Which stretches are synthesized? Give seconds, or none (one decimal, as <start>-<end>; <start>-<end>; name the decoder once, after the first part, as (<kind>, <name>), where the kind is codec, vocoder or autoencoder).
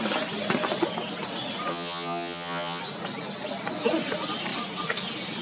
1.7-2.8 (vocoder, HiFi-GAN)